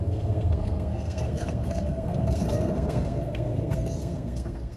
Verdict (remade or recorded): remade